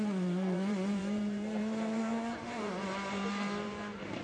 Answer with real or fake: fake